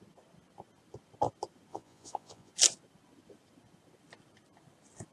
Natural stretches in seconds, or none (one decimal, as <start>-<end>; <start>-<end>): 0.0-1.7; 2.5-5.1